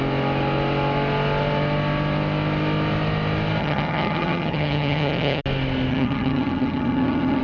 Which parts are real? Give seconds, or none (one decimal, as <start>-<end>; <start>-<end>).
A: 0.0-3.6; 5.4-5.9